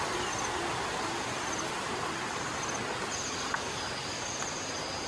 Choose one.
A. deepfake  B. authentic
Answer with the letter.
B